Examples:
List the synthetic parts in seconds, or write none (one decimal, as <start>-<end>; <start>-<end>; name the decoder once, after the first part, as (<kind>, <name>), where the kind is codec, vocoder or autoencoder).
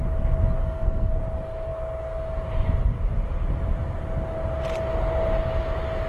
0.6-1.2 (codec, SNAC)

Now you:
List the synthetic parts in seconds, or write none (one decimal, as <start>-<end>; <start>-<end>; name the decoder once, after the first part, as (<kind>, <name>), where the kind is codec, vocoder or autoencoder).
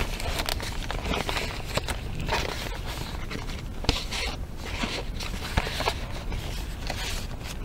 3.1-6.2 (vocoder, BigVGAN v2)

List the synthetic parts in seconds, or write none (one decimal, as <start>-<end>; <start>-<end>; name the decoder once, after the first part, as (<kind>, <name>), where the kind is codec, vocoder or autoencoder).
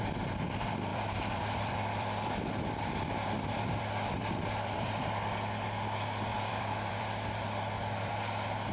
0.9-5.0 (vocoder, BigVGAN v2); 6.3-8.1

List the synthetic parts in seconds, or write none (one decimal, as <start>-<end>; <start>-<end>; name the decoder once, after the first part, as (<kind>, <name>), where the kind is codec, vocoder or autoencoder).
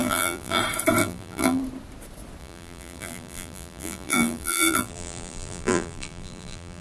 0.0-0.6 (vocoder, BigVGAN v2); 1.0-1.6; 2.4-6.8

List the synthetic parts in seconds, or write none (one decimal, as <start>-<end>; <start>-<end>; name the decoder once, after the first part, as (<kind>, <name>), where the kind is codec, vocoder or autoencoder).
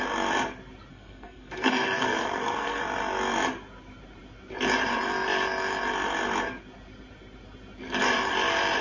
0.9-2.8 (codec, SNAC)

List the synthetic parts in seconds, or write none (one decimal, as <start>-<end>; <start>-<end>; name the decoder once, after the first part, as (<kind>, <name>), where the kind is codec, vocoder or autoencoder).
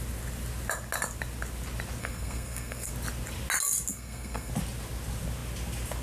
2.0-2.9 (codec, SNAC); 3.9-4.5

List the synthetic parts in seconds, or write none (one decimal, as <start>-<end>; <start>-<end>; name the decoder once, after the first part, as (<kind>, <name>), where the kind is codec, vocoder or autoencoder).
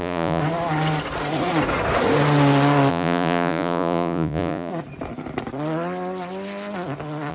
0.0-0.4 (vocoder, Vocos); 2.9-4.7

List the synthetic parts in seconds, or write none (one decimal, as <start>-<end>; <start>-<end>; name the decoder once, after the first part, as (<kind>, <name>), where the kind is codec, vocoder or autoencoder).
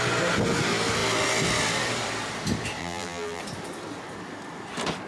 2.8-3.4 (vocoder, BigVGAN v2)